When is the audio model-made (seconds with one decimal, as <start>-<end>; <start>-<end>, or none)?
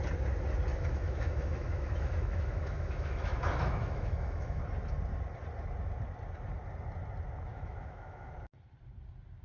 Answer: 0.7-4.6; 7.5-8.3